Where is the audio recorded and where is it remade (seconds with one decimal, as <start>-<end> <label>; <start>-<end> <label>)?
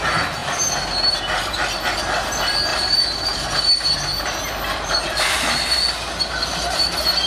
0.0-2.7 recorded; 2.7-5.8 remade; 5.8-7.3 recorded